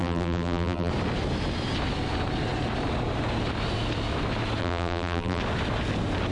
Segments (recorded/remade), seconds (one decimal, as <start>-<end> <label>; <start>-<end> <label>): 0.0-0.9 remade; 0.9-4.6 recorded; 4.6-5.4 remade; 5.4-6.3 recorded